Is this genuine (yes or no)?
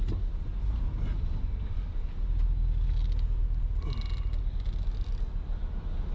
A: yes